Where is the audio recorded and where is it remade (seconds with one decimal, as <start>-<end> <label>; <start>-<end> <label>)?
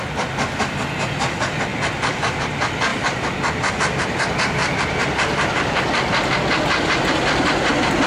0.0-4.6 recorded; 4.6-5.8 remade; 5.8-8.1 recorded